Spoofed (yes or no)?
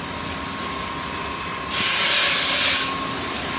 no